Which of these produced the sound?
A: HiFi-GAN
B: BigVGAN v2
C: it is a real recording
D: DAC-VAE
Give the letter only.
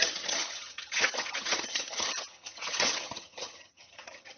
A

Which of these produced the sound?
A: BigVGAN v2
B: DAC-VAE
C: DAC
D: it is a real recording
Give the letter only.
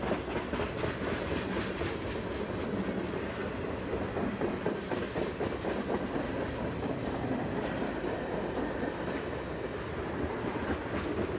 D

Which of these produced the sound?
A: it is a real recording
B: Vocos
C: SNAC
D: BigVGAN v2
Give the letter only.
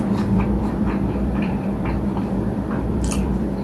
D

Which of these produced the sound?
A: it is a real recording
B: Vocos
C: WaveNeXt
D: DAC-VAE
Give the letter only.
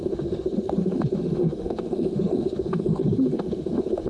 D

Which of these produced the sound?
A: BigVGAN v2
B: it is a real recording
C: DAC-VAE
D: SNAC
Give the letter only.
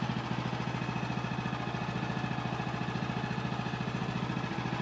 B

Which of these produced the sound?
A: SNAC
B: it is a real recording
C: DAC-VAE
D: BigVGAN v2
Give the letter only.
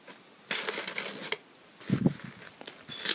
B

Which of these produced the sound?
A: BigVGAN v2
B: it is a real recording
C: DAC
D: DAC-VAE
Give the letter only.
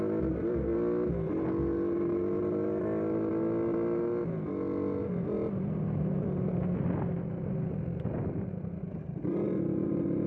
B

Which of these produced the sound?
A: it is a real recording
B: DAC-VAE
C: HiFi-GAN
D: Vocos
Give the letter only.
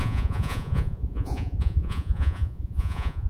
D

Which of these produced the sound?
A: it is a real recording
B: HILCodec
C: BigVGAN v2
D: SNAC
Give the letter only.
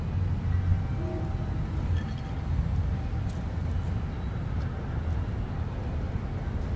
A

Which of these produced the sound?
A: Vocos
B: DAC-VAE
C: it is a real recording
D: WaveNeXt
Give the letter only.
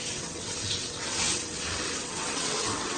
D